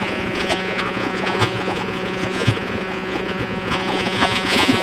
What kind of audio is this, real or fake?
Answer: fake